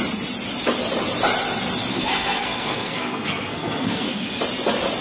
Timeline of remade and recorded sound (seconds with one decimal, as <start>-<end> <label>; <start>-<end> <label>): 0.0-1.9 recorded; 1.9-4.4 remade; 4.4-5.0 recorded